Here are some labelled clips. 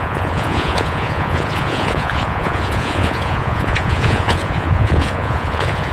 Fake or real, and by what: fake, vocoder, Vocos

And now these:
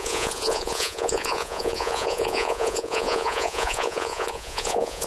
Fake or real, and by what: fake, vocoder, Vocos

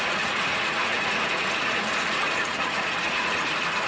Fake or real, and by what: fake, vocoder, Vocos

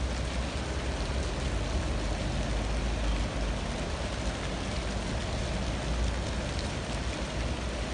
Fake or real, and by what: real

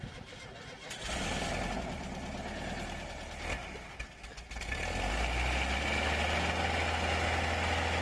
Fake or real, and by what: real